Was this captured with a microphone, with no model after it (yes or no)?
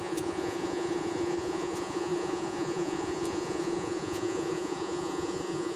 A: no